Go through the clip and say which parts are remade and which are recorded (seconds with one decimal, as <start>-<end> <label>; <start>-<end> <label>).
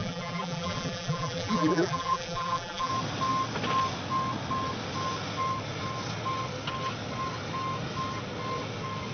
0.0-2.9 remade; 2.9-9.1 recorded